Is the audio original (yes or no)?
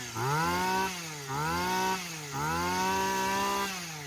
yes